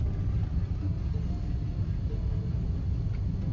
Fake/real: real